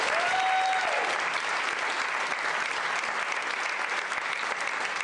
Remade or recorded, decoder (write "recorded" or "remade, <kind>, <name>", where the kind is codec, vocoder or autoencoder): recorded